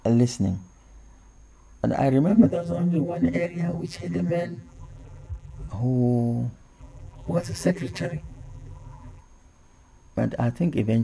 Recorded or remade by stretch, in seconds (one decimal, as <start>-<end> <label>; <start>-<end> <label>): 0.0-2.3 recorded; 2.3-5.7 remade; 5.7-6.8 recorded; 6.8-9.2 remade; 9.2-11.0 recorded